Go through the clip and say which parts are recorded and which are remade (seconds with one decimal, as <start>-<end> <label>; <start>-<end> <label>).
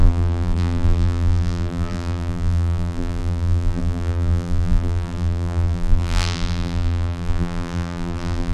0.0-8.5 remade